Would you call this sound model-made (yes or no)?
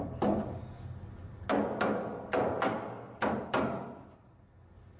no